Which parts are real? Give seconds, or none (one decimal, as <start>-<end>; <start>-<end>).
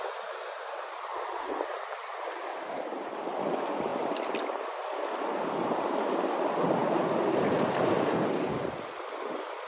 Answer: 0.0-9.7